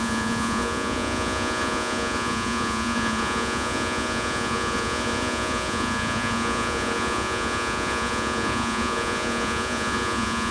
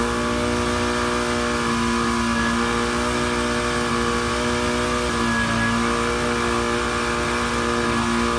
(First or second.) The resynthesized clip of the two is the first